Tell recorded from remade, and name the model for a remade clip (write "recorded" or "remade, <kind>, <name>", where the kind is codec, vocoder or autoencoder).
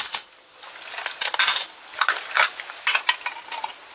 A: recorded